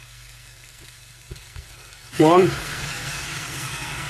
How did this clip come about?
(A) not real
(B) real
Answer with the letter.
A